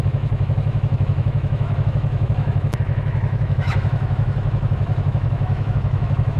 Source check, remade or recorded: remade